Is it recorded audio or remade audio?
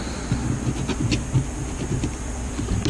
recorded